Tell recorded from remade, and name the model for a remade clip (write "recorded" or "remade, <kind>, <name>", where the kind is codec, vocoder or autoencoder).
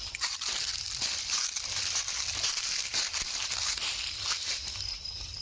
recorded